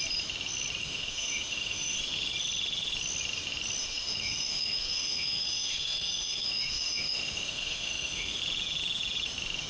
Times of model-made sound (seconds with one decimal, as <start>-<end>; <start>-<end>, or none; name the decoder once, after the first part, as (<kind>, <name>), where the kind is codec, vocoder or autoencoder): 0.8-2.0 (autoencoder, DAC-VAE); 3.8-8.4